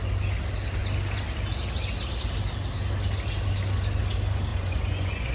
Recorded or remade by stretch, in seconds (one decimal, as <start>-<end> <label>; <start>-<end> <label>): 0.0-4.5 recorded; 4.5-5.3 remade